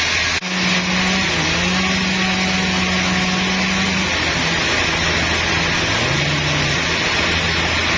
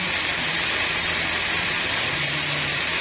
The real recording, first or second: first